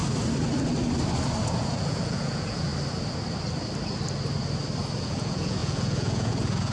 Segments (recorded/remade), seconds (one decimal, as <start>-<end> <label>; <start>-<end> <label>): 0.0-1.8 recorded; 1.8-2.7 remade; 2.7-5.0 recorded; 5.0-6.7 remade